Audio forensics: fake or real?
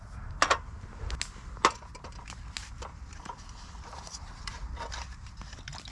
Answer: real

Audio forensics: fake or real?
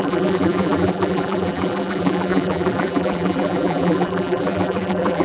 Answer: fake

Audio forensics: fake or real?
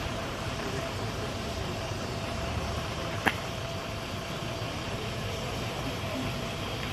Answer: fake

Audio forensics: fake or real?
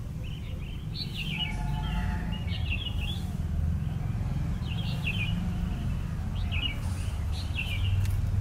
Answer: real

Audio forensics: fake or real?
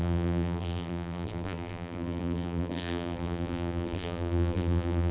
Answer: fake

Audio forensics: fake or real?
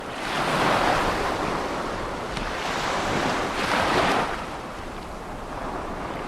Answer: real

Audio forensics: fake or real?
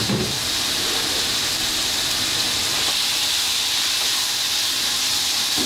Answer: fake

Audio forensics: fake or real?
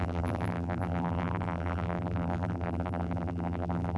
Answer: fake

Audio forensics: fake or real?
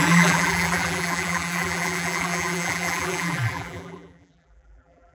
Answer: fake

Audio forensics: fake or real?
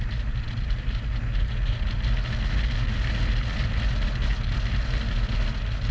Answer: real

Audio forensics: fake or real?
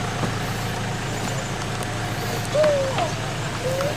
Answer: real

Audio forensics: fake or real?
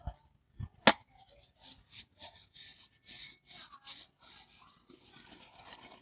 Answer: real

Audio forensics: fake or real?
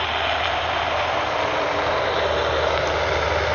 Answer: fake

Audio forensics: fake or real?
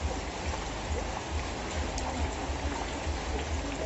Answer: real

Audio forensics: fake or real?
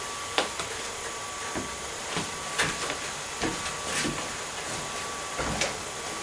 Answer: real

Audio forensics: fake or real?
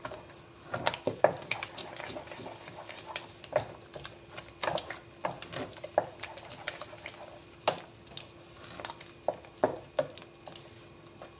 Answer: real